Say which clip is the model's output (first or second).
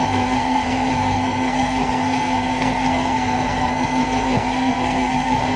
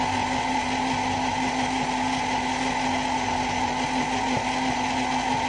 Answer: first